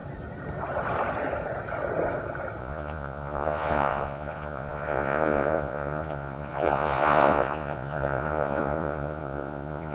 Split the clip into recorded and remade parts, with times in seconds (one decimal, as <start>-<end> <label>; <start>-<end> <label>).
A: 0.0-2.6 recorded; 2.6-9.9 remade

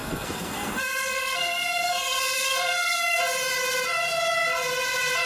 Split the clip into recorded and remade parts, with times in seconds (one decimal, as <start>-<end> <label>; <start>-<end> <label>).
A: 0.0-3.2 remade; 3.2-5.3 recorded

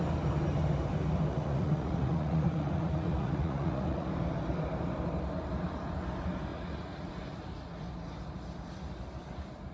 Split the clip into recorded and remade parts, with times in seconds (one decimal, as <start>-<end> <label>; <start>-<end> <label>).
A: 0.0-1.3 recorded; 1.3-4.1 remade; 4.1-6.5 recorded; 6.5-7.1 remade; 7.1-9.7 recorded

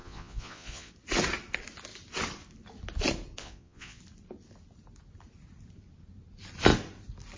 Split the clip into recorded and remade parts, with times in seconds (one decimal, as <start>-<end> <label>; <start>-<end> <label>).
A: 0.0-0.9 remade; 0.9-3.4 recorded; 3.4-4.0 remade; 4.0-7.4 recorded

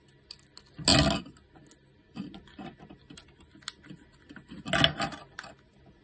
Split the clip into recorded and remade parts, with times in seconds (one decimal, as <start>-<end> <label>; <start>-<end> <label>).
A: 0.0-6.0 recorded

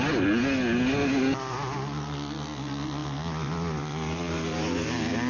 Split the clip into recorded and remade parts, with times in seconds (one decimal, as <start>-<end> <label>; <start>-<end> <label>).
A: 0.0-5.3 recorded

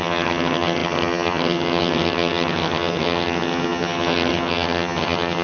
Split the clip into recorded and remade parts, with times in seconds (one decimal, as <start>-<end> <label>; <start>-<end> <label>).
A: 0.0-5.4 remade